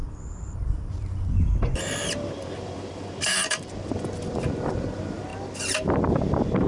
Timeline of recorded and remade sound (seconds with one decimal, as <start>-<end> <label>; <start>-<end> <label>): 0.0-5.3 remade; 5.3-6.7 recorded